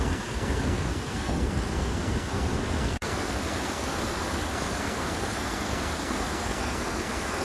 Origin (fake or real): fake